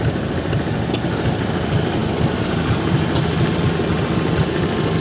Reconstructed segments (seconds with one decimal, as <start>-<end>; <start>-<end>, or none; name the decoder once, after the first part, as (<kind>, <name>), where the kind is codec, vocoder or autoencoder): none